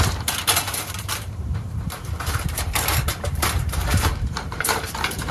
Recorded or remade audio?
remade